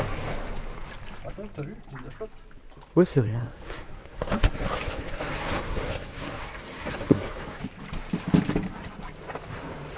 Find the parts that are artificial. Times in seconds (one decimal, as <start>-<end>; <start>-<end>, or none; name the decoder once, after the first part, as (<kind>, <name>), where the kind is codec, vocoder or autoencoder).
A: 2.9-7.6 (codec, SNAC)